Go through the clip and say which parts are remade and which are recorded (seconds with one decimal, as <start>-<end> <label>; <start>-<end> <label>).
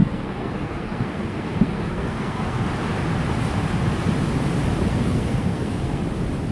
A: 0.0-2.7 remade; 2.7-4.9 recorded; 4.9-6.0 remade; 6.0-6.5 recorded